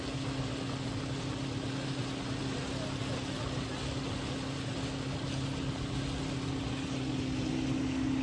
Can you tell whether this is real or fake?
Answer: real